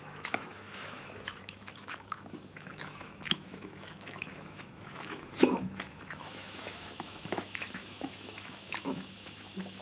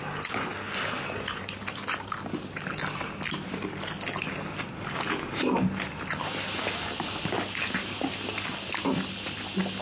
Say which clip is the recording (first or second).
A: second